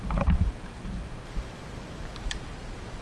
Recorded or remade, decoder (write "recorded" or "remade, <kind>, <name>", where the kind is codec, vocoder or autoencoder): remade, vocoder, BigVGAN v2